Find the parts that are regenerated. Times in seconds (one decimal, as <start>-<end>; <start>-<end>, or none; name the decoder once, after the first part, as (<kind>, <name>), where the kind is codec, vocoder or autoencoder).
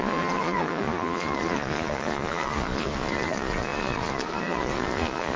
0.0-5.4 (vocoder, Vocos)